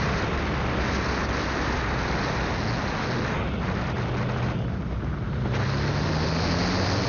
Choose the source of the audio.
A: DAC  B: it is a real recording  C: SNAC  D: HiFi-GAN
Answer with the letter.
B